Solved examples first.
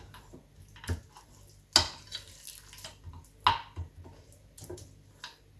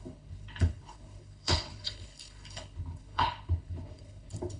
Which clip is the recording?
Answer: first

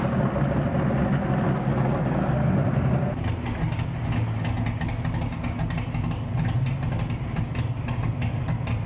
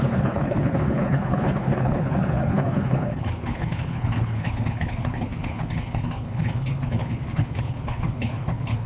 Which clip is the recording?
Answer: first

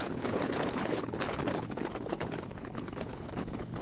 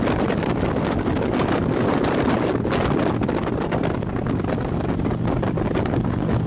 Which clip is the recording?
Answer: second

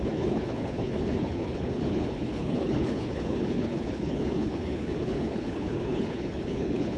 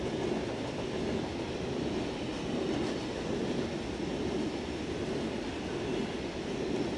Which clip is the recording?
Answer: second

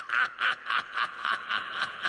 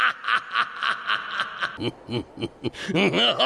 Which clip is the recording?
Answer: second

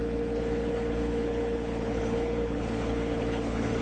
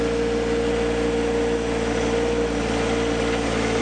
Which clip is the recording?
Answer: second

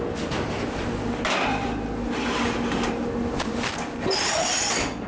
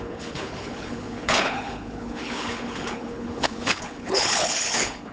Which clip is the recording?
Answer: first